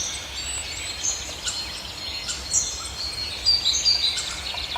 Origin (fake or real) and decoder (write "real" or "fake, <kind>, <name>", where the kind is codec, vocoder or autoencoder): real